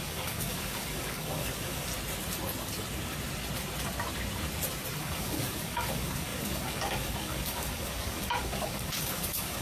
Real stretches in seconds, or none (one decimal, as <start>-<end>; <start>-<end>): 1.9-5.0